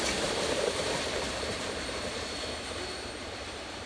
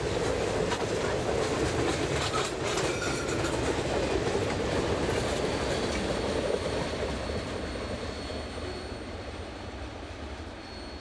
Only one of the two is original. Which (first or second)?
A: second